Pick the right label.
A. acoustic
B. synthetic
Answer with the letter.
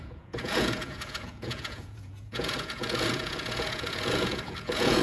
B